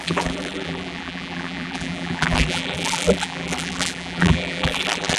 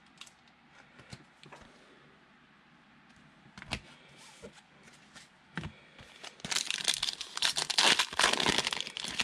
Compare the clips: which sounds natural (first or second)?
second